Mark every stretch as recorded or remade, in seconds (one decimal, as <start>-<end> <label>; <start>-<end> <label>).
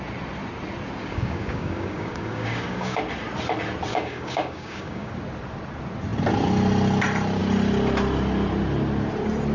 0.0-1.0 recorded; 1.0-3.0 remade; 3.0-3.9 recorded; 3.9-5.1 remade; 5.1-9.5 recorded